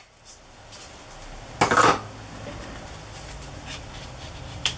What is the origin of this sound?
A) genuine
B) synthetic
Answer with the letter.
A